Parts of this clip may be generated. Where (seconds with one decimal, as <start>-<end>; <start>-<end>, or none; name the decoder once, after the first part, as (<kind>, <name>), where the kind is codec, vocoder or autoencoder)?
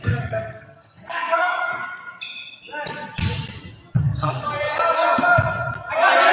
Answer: 0.0-1.7 (codec, SNAC); 4.0-4.5